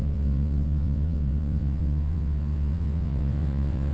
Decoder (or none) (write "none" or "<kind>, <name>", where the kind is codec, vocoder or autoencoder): vocoder, WaveNeXt